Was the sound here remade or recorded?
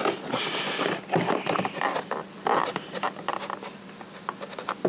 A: recorded